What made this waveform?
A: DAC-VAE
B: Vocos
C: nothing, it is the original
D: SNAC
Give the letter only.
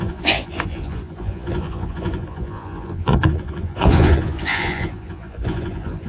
B